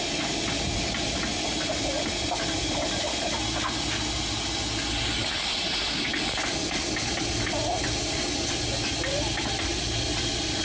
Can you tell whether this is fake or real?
real